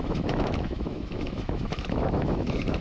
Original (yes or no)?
no